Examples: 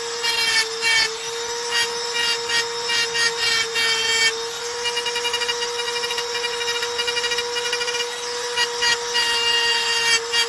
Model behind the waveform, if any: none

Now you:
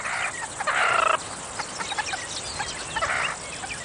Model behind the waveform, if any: none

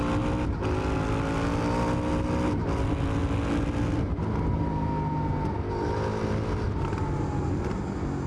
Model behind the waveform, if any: none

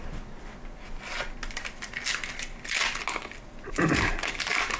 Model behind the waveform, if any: none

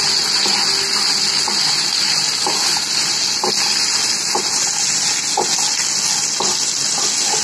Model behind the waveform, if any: none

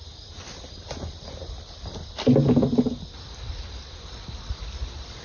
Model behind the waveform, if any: none